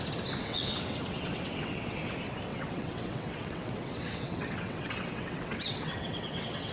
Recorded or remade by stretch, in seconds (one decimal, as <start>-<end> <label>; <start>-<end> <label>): 0.0-0.4 recorded; 0.4-2.1 remade; 2.1-2.5 recorded; 2.5-6.7 remade

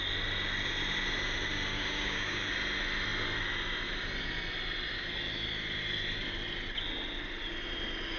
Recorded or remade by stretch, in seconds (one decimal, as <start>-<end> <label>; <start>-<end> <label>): 0.0-1.7 recorded; 1.7-2.5 remade; 2.5-8.2 recorded

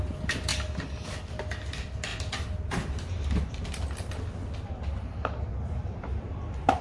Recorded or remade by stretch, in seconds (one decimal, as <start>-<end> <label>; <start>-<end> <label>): 0.0-6.8 recorded

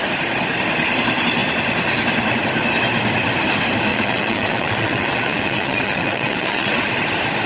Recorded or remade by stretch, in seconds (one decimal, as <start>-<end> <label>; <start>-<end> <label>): 0.0-3.9 recorded; 3.9-6.9 remade; 6.9-7.5 recorded

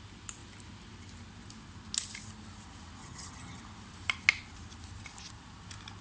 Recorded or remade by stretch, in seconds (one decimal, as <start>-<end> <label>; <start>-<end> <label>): 0.0-3.0 recorded; 3.0-3.6 remade; 3.6-6.0 recorded

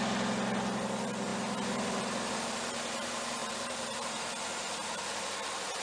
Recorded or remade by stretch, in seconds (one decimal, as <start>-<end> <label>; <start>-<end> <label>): 0.0-3.4 recorded; 3.4-3.9 remade; 3.9-5.8 recorded

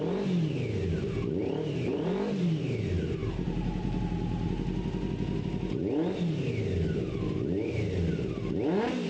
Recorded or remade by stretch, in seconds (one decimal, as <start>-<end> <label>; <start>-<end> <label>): 0.0-1.9 recorded; 1.9-2.6 remade; 2.6-3.2 recorded; 3.2-4.0 remade; 4.0-9.1 recorded

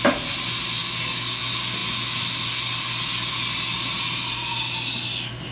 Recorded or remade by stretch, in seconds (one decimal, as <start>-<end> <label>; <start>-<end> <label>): 0.0-5.5 recorded